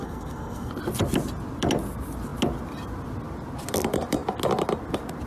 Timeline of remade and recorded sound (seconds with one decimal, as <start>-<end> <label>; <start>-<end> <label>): 0.0-0.7 remade; 0.7-5.3 recorded